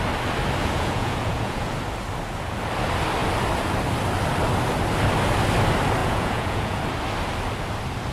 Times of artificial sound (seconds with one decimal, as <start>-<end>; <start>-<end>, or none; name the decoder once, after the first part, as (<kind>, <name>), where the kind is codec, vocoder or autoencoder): 0.6-1.7 (vocoder, Vocos); 6.0-6.8